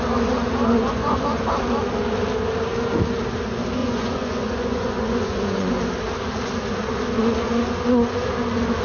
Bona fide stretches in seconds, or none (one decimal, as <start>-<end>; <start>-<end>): 0.0-0.8; 1.5-3.8; 5.8-8.8

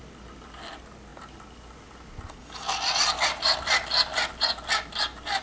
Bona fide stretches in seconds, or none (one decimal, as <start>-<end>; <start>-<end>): 0.0-5.4

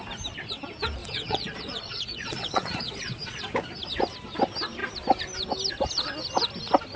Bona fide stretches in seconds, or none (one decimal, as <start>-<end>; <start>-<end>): 0.0-1.0; 3.4-7.0

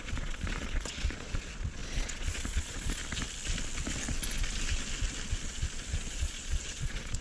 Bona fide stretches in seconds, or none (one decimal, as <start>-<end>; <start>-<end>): 3.0-6.1

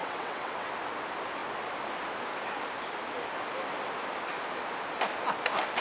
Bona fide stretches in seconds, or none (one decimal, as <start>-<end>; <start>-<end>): 0.7-5.8

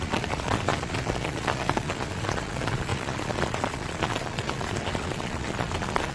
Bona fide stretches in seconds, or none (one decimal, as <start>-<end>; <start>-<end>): none